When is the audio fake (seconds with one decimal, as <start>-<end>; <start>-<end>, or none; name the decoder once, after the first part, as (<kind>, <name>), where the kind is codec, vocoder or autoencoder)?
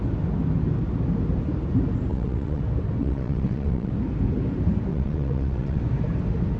2.1-2.6 (vocoder, WaveNeXt); 3.0-3.9; 4.9-5.8